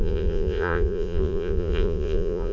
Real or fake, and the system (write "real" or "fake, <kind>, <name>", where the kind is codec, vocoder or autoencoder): fake, vocoder, Vocos